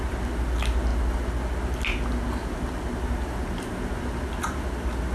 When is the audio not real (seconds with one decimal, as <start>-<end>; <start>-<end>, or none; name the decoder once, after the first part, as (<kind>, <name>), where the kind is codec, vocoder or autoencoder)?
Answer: none